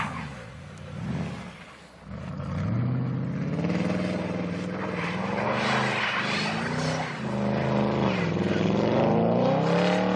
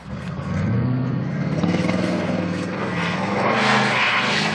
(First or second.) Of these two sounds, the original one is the first